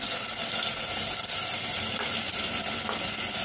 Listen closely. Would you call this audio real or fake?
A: real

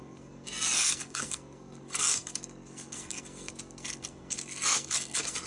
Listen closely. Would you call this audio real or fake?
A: fake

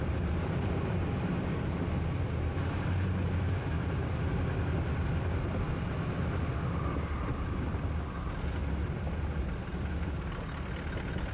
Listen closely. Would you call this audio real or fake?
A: real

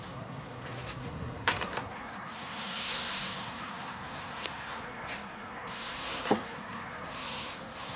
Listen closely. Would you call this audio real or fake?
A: fake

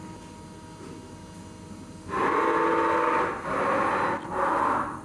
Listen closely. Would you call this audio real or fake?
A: real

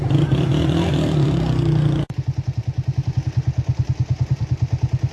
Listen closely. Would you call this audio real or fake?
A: fake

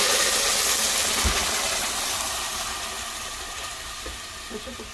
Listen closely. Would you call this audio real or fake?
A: real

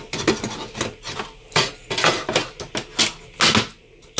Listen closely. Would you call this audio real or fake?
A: real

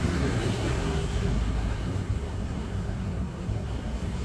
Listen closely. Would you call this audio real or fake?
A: fake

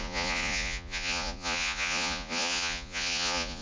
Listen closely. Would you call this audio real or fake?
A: fake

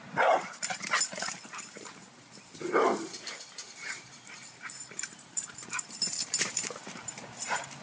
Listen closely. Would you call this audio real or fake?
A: fake